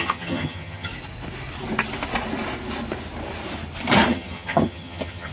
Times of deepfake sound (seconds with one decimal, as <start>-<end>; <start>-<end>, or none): 0.0-0.9; 4.1-5.3